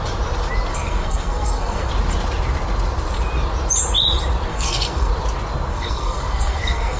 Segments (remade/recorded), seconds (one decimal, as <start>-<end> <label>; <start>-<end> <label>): 0.0-0.7 recorded; 0.7-1.9 remade; 1.9-4.5 recorded; 4.5-5.1 remade; 5.1-5.7 recorded; 5.7-7.0 remade